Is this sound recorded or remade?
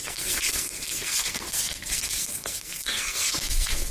remade